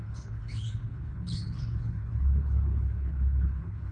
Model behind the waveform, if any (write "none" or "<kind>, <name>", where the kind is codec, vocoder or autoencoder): codec, HILCodec